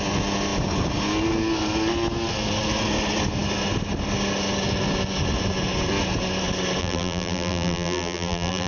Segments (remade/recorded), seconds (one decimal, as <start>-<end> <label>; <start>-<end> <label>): 0.0-6.8 recorded; 6.8-8.7 remade